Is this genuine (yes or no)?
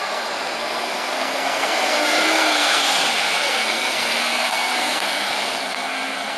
no